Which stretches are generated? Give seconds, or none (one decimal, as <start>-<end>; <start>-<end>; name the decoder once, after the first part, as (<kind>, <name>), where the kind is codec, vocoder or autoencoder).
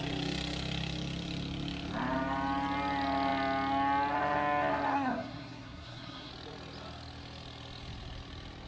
4.9-6.3 (codec, SNAC)